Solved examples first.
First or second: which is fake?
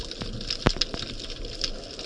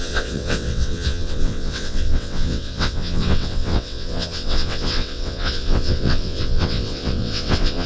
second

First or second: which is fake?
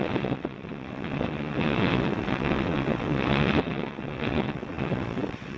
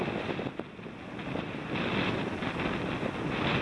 first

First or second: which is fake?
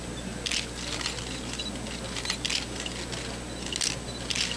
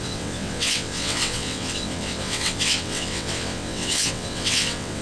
second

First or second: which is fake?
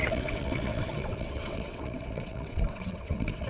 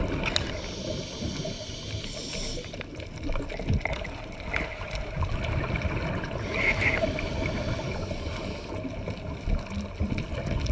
first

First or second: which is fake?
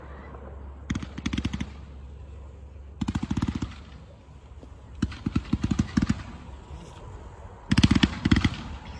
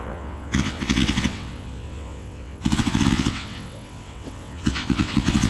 second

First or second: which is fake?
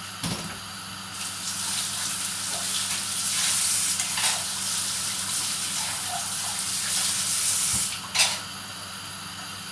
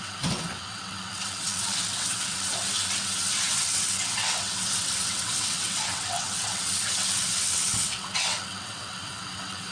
second